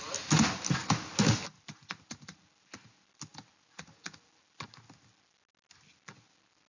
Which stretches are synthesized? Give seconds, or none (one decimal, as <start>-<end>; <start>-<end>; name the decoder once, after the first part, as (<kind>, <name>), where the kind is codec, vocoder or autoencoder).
none